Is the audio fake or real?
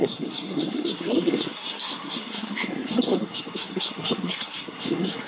fake